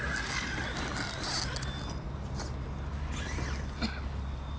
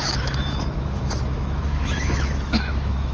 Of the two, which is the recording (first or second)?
first